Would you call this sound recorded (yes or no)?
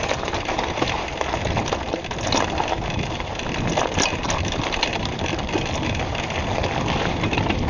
yes